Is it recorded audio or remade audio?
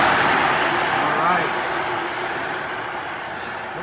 recorded